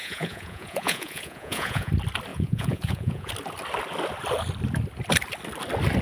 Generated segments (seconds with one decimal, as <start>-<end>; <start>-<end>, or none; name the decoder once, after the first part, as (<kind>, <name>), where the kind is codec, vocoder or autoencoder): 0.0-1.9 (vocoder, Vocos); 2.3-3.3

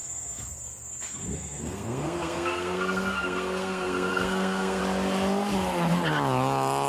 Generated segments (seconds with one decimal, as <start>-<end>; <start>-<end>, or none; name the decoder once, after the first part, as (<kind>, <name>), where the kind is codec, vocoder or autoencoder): 0.0-4.8 (codec, SNAC)

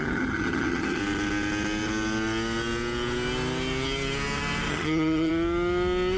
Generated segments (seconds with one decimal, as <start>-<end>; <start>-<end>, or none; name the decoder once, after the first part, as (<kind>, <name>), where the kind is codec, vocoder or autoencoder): 0.0-1.0 (vocoder, HiFi-GAN); 4.7-5.3

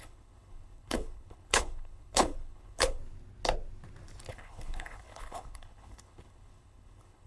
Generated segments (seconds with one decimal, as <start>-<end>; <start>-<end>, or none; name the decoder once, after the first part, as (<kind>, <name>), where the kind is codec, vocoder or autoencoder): 0.0-3.0 (codec, HILCodec); 4.3-7.3

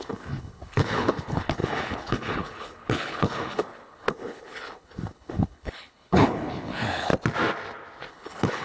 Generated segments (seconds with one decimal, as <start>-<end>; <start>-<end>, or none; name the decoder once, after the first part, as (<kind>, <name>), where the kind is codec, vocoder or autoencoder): 0.0-7.1 (codec, HILCodec); 8.1-8.6